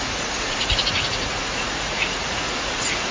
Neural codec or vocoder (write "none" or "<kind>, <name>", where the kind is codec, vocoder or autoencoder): vocoder, Vocos